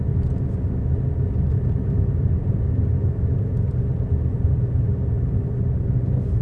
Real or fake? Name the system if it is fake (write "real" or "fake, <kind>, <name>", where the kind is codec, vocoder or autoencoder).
real